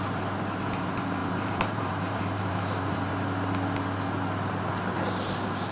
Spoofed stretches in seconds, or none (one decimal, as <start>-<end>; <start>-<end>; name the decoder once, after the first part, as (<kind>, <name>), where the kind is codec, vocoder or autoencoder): 1.2-3.1 (vocoder, BigVGAN v2)